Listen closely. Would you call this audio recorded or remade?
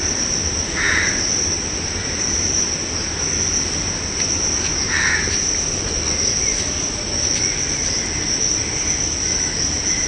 recorded